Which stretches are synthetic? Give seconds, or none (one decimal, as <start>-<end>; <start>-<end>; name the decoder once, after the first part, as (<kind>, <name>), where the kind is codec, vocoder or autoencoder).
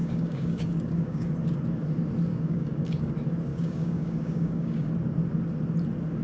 0.0-1.3 (codec, DAC); 2.3-3.1; 3.5-4.9